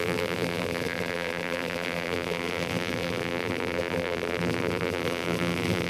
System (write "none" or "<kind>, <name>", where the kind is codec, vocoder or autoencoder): vocoder, BigVGAN v2